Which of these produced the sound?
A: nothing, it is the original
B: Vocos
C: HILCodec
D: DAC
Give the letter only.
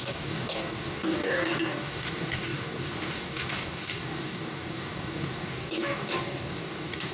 D